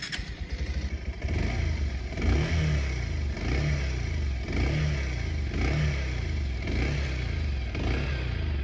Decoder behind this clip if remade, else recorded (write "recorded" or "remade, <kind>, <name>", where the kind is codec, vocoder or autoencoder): recorded